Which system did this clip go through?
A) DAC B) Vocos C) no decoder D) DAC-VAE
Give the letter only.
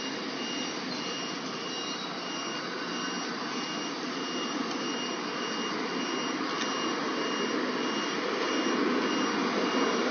C